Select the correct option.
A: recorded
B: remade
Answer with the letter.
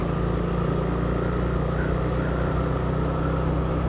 A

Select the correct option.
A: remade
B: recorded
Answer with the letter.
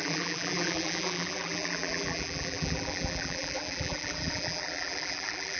A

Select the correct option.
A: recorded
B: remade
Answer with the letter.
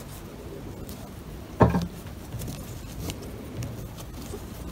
A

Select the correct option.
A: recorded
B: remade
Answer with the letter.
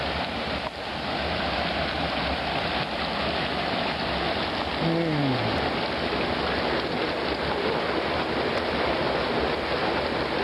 A